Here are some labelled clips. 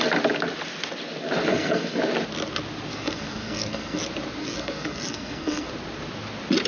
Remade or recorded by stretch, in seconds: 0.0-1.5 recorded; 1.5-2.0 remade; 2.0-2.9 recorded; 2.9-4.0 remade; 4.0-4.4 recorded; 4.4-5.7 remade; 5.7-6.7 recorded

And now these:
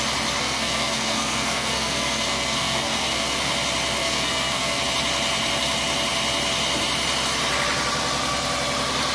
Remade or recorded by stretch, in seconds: 0.0-0.4 recorded; 0.4-3.5 remade; 3.5-4.0 recorded; 4.0-4.8 remade; 4.8-9.1 recorded